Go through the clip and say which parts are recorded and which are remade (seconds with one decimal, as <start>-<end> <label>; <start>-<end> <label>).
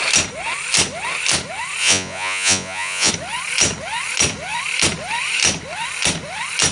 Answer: 0.0-1.8 recorded; 1.8-3.1 remade; 3.1-6.7 recorded